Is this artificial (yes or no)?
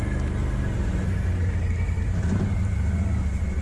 no